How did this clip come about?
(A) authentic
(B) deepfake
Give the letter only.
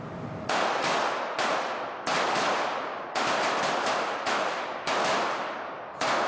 A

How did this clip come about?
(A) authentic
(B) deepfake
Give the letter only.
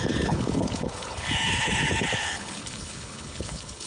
B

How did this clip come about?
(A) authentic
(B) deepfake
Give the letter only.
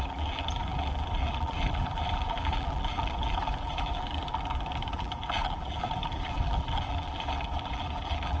B